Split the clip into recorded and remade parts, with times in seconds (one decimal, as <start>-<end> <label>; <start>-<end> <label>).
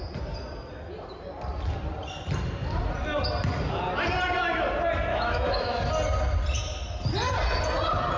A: 0.0-5.1 recorded; 5.1-5.9 remade; 5.9-8.2 recorded